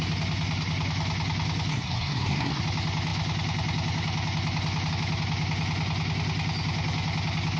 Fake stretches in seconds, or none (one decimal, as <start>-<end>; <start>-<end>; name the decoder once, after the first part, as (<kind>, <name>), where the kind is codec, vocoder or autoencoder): 1.7-2.6 (codec, SNAC)